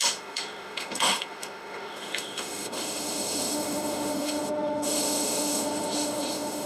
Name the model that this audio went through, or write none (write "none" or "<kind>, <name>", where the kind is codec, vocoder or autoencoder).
autoencoder, DAC-VAE